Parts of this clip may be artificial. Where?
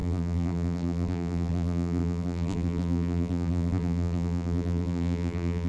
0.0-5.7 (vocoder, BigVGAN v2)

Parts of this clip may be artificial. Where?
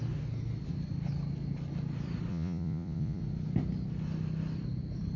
2.3-3.2 (vocoder, Vocos)